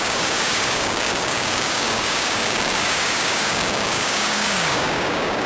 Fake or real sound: fake